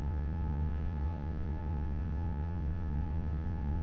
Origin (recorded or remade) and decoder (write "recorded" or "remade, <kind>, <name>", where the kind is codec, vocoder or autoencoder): remade, vocoder, WaveNeXt